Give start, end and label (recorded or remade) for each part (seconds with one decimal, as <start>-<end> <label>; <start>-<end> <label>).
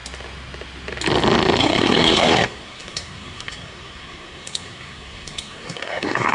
0.0-1.6 recorded; 1.6-6.3 remade